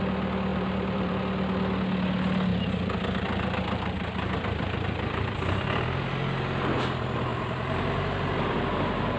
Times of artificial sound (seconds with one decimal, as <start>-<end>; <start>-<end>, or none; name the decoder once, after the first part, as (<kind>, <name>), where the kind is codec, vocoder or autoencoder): 0.5-1.2 (vocoder, BigVGAN v2); 2.5-5.3; 7.3-9.2